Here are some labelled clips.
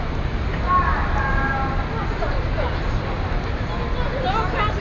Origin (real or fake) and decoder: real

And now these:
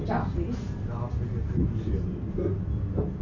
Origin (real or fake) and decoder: real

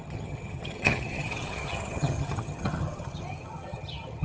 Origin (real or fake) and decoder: fake, vocoder, HiFi-GAN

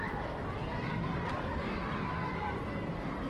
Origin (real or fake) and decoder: fake, vocoder, BigVGAN v2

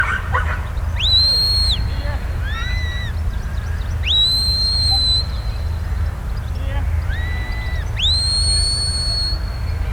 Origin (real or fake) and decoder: real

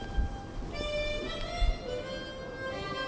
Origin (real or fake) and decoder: real